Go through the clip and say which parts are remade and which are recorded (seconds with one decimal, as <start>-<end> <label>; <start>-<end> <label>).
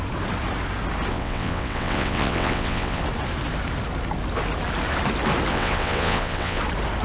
0.0-1.1 recorded; 1.1-3.0 remade; 3.0-5.5 recorded; 5.5-6.6 remade; 6.6-7.0 recorded